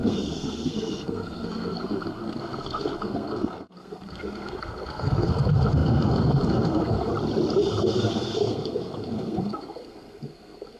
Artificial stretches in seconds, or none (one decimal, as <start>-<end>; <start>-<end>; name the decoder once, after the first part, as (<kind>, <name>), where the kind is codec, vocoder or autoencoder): 0.0-7.1 (codec, SNAC); 7.8-10.8